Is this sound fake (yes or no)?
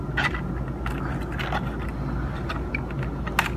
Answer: no